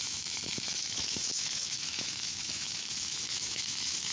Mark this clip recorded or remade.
remade